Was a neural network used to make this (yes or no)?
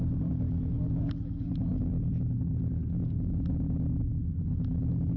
no